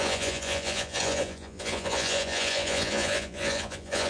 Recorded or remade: remade